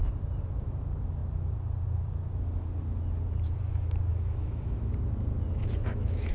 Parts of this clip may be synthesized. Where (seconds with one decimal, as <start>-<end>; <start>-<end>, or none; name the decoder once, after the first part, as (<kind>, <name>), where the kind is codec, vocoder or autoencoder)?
4.1-4.9 (autoencoder, DAC-VAE); 5.6-6.3